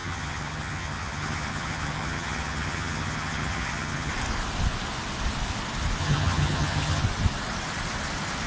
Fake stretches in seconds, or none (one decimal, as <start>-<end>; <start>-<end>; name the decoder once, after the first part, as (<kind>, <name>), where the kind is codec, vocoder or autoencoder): 0.0-4.1 (vocoder, HiFi-GAN); 6.0-7.0